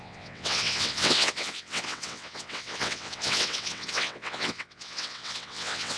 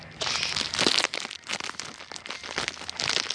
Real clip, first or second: second